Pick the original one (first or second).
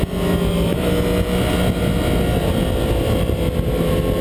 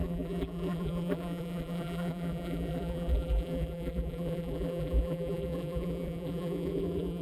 first